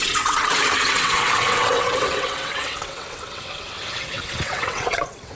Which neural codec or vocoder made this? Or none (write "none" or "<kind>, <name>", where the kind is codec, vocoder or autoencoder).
vocoder, WaveNeXt